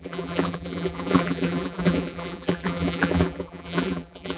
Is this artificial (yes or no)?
yes